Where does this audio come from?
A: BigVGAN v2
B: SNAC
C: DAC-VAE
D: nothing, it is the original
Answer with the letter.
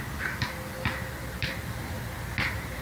D